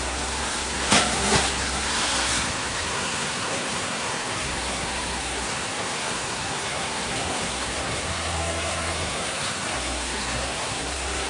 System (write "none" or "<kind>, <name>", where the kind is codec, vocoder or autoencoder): codec, SNAC